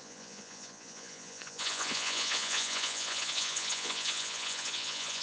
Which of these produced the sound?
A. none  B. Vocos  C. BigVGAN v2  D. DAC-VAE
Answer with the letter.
B